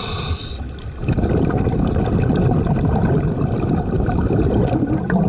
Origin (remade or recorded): recorded